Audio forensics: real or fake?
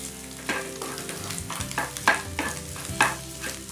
real